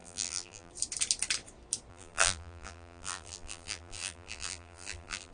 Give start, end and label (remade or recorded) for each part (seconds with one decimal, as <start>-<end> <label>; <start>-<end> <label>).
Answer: 0.0-0.7 remade; 0.7-1.9 recorded; 1.9-5.3 remade